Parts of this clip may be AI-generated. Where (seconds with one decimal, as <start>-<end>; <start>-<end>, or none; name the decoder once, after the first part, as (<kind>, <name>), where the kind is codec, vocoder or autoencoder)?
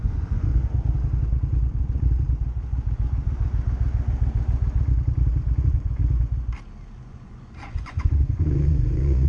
0.0-0.5 (vocoder, Vocos); 5.6-6.0; 7.0-9.3